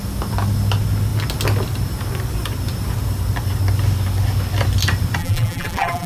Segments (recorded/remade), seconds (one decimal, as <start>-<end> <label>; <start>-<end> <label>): 0.0-5.2 recorded; 5.2-6.1 remade